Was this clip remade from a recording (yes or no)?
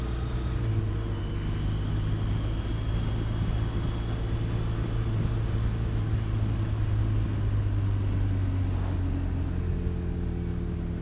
no